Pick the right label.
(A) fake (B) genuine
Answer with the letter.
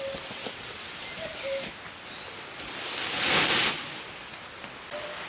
B